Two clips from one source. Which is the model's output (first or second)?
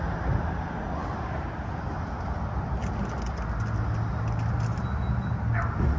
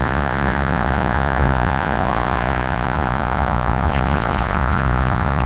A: second